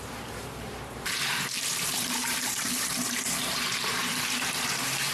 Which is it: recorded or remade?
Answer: remade